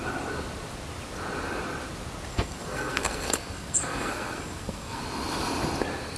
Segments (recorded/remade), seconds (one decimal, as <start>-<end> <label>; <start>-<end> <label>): 0.0-2.3 recorded; 2.3-5.0 remade; 5.0-6.2 recorded

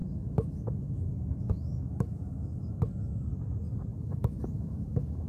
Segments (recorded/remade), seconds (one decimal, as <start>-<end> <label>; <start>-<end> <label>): 0.0-2.8 remade; 2.8-3.9 recorded; 3.9-5.3 remade

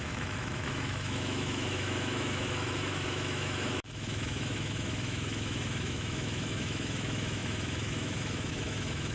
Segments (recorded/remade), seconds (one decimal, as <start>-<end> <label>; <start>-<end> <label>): 0.0-9.1 remade

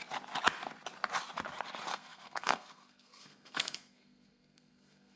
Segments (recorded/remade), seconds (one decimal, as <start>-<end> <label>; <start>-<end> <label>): 0.0-1.9 recorded; 1.9-5.2 remade

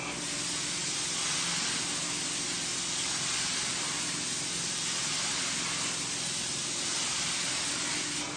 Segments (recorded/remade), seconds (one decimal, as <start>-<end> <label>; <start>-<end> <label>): 0.0-8.4 recorded

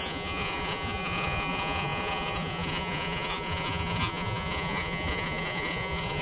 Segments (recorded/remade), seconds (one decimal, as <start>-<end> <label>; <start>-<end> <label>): 0.0-6.2 remade

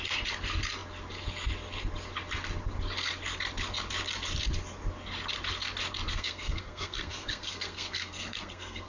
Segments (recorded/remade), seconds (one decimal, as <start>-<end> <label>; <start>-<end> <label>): 0.0-6.1 recorded; 6.1-8.9 remade